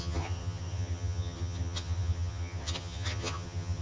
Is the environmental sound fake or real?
fake